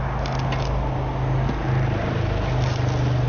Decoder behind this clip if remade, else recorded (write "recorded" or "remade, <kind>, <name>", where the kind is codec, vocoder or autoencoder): recorded